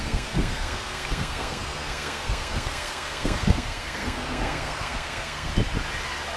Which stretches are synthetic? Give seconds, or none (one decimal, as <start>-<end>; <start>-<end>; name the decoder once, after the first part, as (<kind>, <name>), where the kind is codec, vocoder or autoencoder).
0.0-5.5 (codec, SNAC)